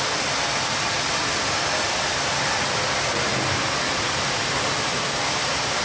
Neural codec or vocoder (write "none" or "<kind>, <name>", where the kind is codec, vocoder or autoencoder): none